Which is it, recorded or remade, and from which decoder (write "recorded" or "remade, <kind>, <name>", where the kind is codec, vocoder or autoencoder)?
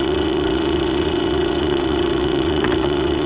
remade, vocoder, WaveNeXt